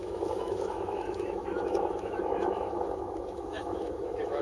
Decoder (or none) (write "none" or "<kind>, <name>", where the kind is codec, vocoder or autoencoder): autoencoder, DAC-VAE